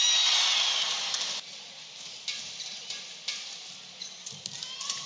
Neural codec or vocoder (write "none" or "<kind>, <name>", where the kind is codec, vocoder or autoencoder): none